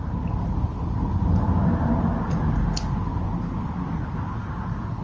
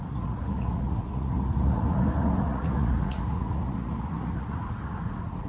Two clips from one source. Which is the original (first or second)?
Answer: first